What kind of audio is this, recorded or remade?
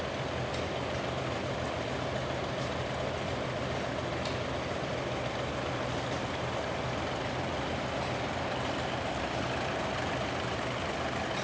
recorded